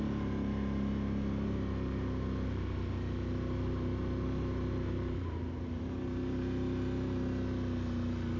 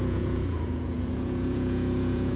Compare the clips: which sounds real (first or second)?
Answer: first